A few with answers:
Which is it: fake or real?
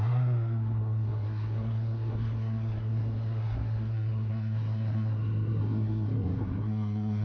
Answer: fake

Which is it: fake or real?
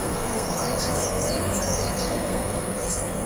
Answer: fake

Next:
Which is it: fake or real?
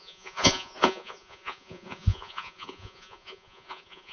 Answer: fake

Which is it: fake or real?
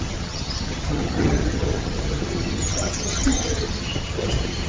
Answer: fake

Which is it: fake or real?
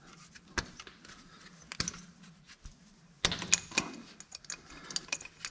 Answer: real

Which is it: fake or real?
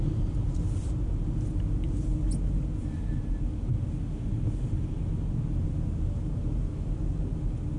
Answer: real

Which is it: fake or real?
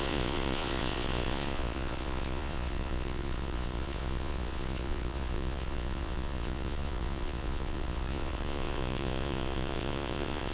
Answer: fake